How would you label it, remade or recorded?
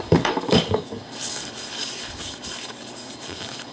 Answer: remade